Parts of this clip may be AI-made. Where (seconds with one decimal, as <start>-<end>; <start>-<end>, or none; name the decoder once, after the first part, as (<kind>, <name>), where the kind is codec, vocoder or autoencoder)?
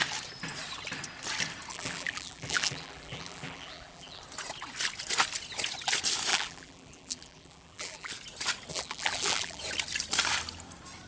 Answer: 1.7-4.2 (vocoder, BigVGAN v2); 6.3-8.1; 8.7-9.6